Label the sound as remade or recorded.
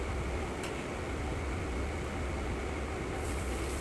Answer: recorded